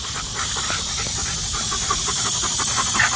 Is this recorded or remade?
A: recorded